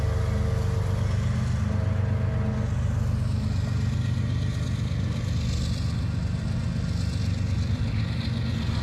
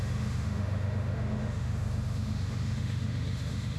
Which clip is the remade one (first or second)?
second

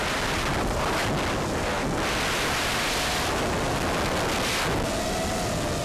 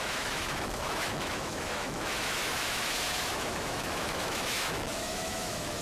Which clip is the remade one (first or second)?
second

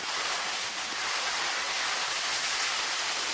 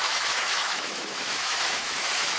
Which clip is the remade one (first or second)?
second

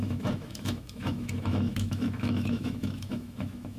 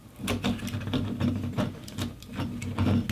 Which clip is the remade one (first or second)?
first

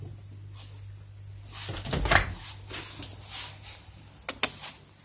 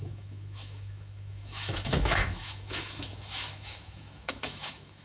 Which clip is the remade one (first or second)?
second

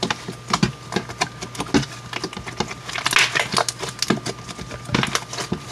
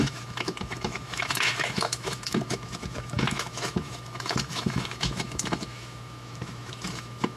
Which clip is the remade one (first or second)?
second